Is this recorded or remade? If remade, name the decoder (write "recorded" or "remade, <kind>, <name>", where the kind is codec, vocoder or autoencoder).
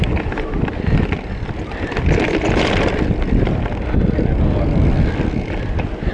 recorded